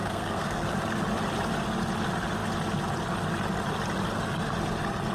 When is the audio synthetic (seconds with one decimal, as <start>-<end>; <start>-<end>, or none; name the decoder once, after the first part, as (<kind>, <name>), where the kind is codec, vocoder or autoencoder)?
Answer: 0.0-0.7 (codec, SNAC)